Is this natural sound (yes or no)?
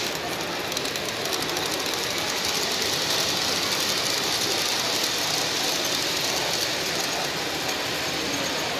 yes